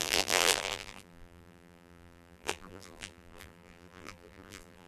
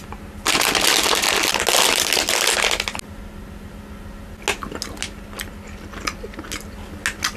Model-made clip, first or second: first